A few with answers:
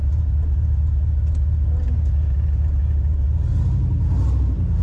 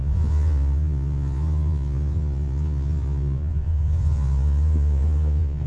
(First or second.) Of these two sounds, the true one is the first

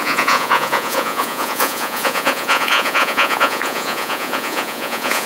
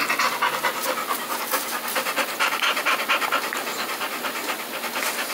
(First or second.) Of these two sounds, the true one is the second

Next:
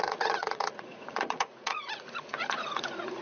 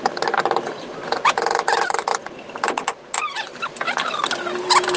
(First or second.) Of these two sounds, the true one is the second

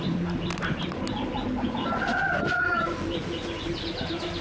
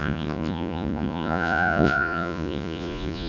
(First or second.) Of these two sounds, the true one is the first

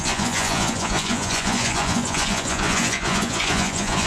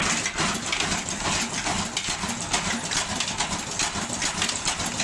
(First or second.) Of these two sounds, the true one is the second